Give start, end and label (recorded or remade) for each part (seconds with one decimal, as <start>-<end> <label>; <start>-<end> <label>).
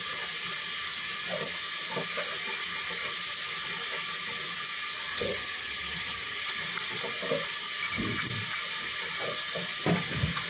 0.0-5.1 recorded; 5.1-6.5 remade; 6.5-10.5 recorded